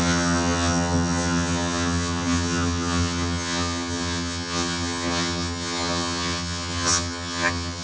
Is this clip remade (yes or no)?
yes